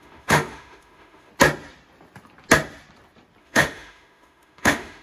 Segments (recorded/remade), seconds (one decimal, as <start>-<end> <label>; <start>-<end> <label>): 0.0-1.3 remade; 1.3-3.4 recorded; 3.4-5.0 remade